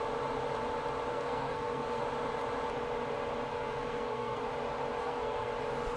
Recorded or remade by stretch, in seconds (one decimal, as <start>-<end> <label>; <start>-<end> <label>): 0.0-1.1 recorded; 1.1-2.0 remade; 2.0-3.5 recorded; 3.5-4.4 remade; 4.4-5.0 recorded; 5.0-5.5 remade; 5.5-6.0 recorded